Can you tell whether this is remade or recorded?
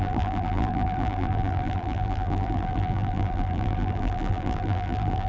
remade